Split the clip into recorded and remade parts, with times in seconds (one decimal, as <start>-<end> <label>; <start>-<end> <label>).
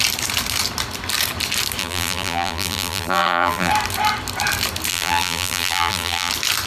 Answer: 0.0-1.8 recorded; 1.8-3.7 remade; 3.7-4.9 recorded; 4.9-6.3 remade; 6.3-6.7 recorded